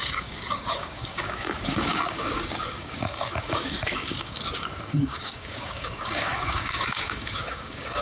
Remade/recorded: remade